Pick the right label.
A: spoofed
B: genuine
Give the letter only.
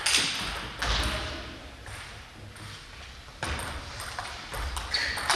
B